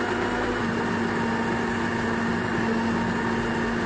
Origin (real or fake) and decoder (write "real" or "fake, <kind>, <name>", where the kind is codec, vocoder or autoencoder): real